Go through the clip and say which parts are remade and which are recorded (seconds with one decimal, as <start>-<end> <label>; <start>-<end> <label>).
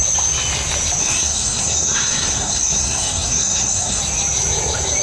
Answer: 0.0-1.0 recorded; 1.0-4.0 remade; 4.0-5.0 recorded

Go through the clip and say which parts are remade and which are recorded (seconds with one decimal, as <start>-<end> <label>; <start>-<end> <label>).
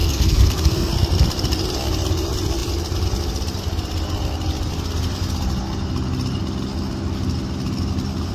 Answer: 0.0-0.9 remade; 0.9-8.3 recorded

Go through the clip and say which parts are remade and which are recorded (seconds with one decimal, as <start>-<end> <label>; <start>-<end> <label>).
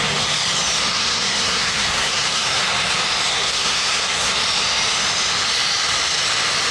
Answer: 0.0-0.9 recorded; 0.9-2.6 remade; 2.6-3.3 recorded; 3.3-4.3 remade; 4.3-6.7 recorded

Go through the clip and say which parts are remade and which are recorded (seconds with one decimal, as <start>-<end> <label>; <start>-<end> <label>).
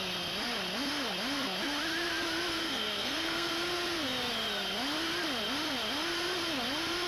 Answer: 0.0-2.6 recorded; 2.6-3.5 remade; 3.5-7.1 recorded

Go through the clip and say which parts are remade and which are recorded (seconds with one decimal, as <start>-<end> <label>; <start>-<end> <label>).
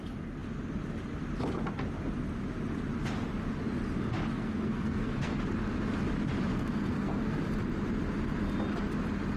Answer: 0.0-4.3 recorded; 4.3-5.4 remade; 5.4-6.5 recorded; 6.5-7.4 remade; 7.4-9.4 recorded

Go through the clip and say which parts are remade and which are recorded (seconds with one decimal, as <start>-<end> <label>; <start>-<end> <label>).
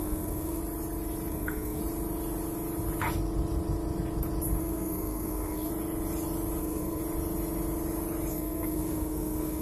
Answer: 0.0-0.6 remade; 0.6-1.3 recorded; 1.3-1.8 remade; 1.8-4.6 recorded; 4.6-5.7 remade; 5.7-6.6 recorded; 6.6-7.0 remade; 7.0-8.3 recorded; 8.3-9.6 remade